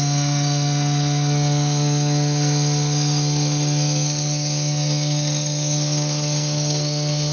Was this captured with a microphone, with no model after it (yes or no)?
no